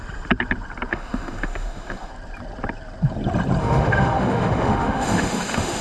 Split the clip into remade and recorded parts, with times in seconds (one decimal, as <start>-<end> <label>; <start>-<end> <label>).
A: 0.0-0.9 recorded; 0.9-2.1 remade; 2.1-3.6 recorded; 3.6-5.8 remade